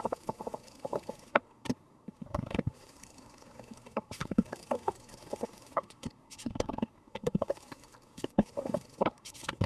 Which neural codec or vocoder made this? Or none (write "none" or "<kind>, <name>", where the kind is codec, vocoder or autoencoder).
codec, SNAC